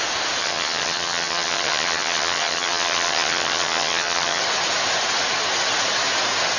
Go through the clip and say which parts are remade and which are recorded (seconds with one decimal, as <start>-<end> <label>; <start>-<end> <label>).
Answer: 0.0-0.4 recorded; 0.4-4.4 remade; 4.4-6.6 recorded